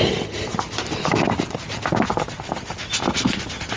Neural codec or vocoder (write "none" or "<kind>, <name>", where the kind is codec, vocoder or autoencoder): none